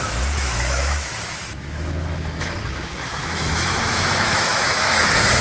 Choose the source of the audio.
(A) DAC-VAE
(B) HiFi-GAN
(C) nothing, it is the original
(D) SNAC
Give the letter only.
A